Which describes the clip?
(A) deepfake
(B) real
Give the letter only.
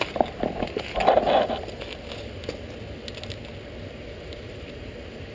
B